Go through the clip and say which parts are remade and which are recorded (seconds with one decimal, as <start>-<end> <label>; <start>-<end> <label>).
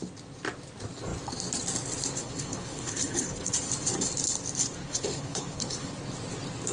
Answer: 0.0-2.2 recorded; 2.2-3.5 remade; 3.5-4.8 recorded; 4.8-5.9 remade; 5.9-6.7 recorded